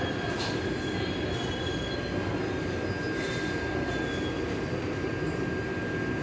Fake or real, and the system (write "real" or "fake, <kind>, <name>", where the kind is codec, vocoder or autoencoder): real